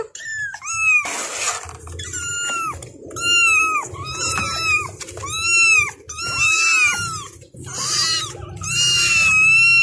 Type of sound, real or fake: real